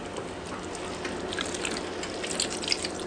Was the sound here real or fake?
real